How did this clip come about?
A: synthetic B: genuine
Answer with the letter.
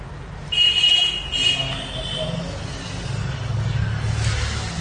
B